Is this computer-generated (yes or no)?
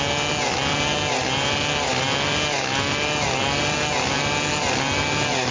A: no